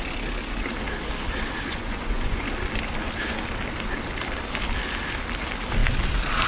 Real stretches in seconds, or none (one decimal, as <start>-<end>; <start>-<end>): 0.0-1.7; 2.5-6.5